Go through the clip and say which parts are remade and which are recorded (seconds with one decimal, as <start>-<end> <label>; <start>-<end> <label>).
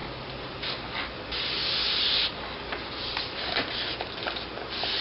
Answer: 0.0-5.0 recorded